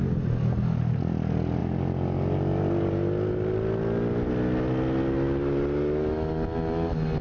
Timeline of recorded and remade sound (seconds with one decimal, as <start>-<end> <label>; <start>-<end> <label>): 0.0-7.2 recorded